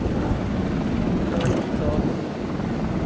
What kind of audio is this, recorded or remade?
recorded